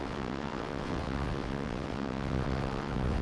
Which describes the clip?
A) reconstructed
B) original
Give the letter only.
A